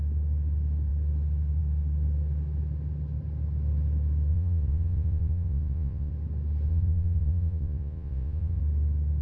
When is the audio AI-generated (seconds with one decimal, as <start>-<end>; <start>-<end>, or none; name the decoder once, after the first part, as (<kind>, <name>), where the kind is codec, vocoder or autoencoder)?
4.3-6.1 (vocoder, Vocos); 6.7-8.6